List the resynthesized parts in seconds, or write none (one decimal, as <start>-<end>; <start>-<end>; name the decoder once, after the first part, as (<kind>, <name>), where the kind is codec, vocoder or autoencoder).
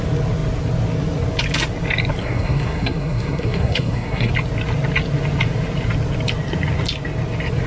2.2-4.3 (codec, SNAC)